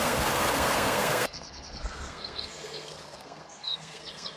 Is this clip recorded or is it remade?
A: remade